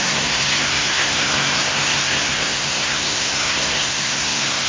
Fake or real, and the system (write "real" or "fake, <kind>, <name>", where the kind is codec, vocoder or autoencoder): fake, codec, SNAC